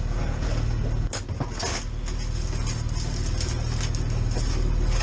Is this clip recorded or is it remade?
recorded